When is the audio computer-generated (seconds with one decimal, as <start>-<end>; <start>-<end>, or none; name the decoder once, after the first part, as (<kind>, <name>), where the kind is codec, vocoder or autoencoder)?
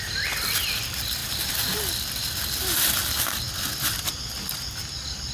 none